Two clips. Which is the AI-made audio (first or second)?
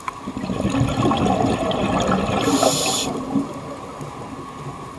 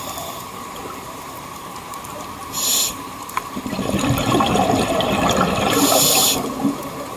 second